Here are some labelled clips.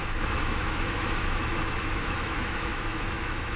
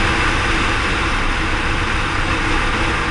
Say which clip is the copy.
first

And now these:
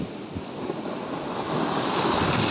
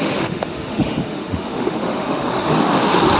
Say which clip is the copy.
second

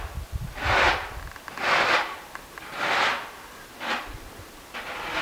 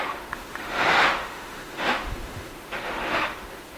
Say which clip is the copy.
second